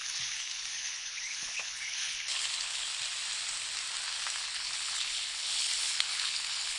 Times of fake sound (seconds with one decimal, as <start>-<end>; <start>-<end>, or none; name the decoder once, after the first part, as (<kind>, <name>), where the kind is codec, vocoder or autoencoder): 0.0-2.9 (codec, HILCodec); 4.5-6.8

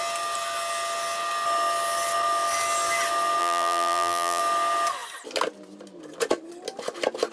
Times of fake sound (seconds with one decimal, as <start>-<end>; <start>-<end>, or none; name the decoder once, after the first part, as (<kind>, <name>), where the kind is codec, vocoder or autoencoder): 3.4-4.4 (vocoder, BigVGAN v2)

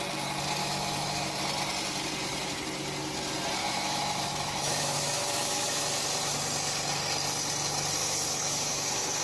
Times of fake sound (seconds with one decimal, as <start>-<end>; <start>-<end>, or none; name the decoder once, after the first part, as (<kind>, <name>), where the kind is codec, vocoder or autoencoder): 0.6-1.4 (autoencoder, DAC-VAE); 3.6-5.8; 8.0-9.2

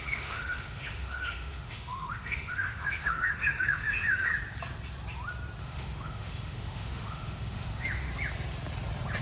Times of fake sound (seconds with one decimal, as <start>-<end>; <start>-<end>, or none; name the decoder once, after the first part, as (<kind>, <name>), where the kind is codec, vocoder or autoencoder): 0.0-4.3 (autoencoder, DAC-VAE); 5.6-8.1

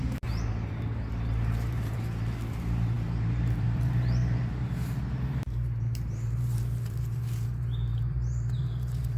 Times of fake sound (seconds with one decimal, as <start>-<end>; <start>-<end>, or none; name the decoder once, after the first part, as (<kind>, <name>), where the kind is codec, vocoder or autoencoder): 0.0-9.2 (vocoder, BigVGAN v2)

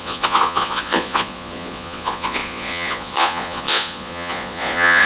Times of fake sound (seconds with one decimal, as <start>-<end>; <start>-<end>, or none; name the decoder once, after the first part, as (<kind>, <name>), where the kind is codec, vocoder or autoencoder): 0.0-5.1 (vocoder, Vocos)

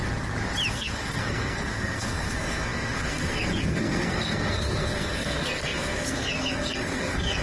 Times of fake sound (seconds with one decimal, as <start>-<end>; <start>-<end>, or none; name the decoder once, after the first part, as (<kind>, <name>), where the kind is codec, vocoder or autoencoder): 0.7-7.4 (codec, SNAC)

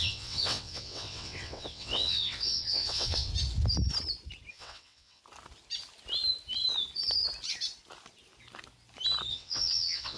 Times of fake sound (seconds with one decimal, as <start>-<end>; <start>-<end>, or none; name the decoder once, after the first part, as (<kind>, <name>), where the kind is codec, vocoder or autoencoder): 0.0-3.3 (vocoder, WaveNeXt); 4.5-5.2; 9.3-10.2